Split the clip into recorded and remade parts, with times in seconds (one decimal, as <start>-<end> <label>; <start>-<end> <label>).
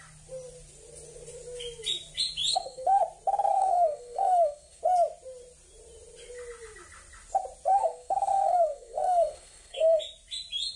0.0-2.5 recorded; 2.5-3.0 remade; 3.0-3.5 recorded; 3.5-4.8 remade; 4.8-7.7 recorded; 7.7-10.0 remade; 10.0-10.8 recorded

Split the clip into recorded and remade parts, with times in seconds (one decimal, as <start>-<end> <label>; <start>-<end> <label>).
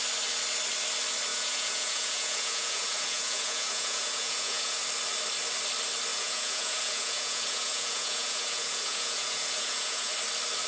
0.0-1.3 recorded; 1.3-4.8 remade; 4.8-6.1 recorded; 6.1-10.1 remade; 10.1-10.7 recorded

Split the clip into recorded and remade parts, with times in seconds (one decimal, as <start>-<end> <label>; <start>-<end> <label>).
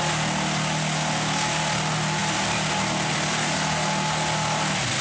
0.0-5.0 recorded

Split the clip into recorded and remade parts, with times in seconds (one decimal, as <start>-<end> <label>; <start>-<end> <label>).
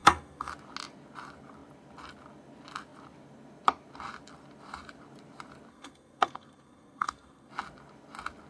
0.0-0.5 remade; 0.5-5.7 recorded; 5.7-7.5 remade; 7.5-8.5 recorded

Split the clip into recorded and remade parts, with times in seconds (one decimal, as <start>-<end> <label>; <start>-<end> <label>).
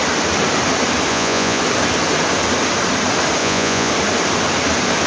0.0-1.1 recorded; 1.1-1.6 remade; 1.6-3.4 recorded; 3.4-3.9 remade; 3.9-5.1 recorded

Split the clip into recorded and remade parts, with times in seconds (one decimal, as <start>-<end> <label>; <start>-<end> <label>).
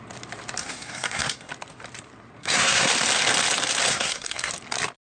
0.0-0.6 recorded; 0.6-1.5 remade; 1.5-2.4 recorded; 2.4-2.9 remade; 2.9-3.9 recorded; 3.9-4.5 remade; 4.5-5.1 recorded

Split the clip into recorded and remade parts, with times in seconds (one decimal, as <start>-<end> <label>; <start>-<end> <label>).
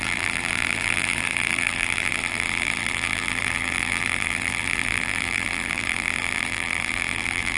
0.0-7.6 remade